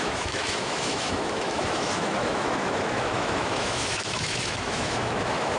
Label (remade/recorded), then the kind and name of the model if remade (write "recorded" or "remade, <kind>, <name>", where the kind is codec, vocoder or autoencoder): remade, autoencoder, DAC-VAE